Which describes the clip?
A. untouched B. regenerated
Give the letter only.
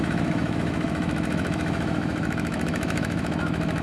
B